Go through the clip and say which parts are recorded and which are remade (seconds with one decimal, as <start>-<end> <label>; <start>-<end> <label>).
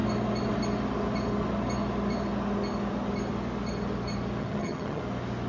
0.0-4.4 recorded; 4.4-5.0 remade; 5.0-5.5 recorded